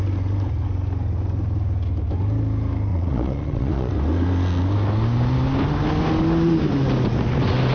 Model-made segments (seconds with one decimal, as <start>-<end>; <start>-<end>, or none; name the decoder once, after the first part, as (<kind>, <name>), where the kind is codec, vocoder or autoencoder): 2.9-3.9 (vocoder, Vocos)